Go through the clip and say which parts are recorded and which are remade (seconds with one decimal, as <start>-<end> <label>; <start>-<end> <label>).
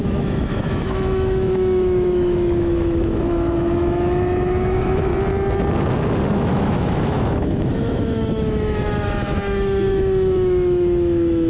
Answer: 0.0-5.1 remade; 5.1-6.3 recorded; 6.3-11.5 remade